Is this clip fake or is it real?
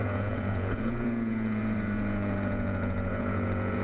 fake